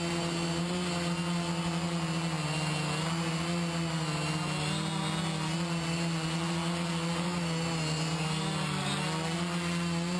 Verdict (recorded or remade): recorded